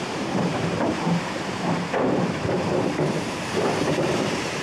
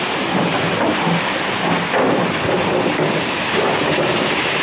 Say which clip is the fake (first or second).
first